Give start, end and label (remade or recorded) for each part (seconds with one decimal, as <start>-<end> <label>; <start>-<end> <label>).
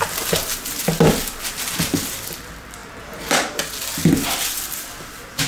0.0-5.5 recorded